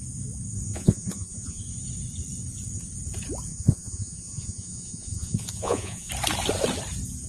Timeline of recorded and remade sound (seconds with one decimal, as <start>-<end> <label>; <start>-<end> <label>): 0.0-0.7 recorded; 0.7-1.6 remade; 1.6-3.5 recorded; 3.5-6.1 remade; 6.1-7.3 recorded